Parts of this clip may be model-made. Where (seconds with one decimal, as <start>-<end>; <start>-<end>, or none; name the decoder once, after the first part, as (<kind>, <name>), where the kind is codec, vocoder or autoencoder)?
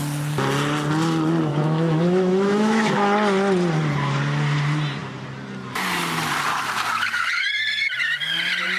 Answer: 1.5-2.9 (autoencoder, DAC-VAE)